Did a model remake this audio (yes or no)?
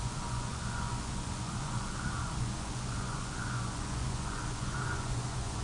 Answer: yes